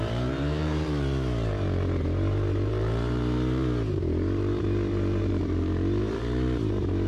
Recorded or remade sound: remade